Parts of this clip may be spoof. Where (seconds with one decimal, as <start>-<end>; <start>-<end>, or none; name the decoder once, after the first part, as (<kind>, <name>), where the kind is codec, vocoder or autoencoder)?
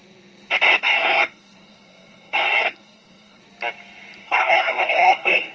0.8-3.4 (codec, SNAC); 4.2-5.5